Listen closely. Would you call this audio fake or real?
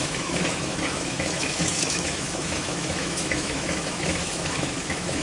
fake